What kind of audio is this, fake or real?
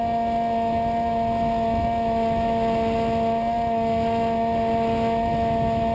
real